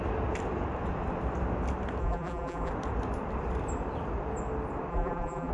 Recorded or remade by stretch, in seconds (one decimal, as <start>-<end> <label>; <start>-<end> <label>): 0.0-2.0 recorded; 2.0-2.7 remade; 2.7-4.9 recorded; 4.9-5.5 remade